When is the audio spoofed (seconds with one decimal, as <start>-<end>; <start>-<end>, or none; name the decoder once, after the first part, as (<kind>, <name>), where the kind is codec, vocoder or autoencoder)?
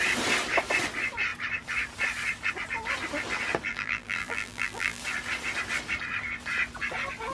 3.7-5.0 (vocoder, BigVGAN v2)